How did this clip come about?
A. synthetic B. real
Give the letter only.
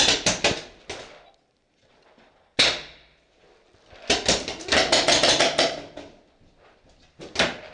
B